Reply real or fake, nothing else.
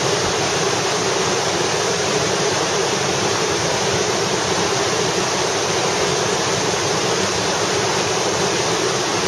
fake